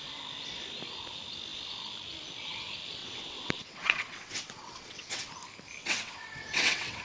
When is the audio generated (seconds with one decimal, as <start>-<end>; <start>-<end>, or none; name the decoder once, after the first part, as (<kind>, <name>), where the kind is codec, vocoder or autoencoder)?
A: 3.0-5.3 (vocoder, WaveNeXt); 5.8-7.0